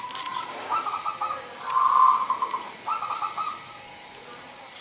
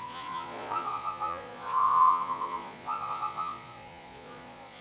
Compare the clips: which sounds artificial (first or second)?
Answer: second